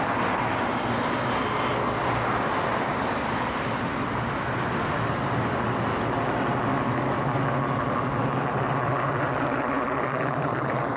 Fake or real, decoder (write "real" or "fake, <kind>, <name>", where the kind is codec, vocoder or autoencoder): real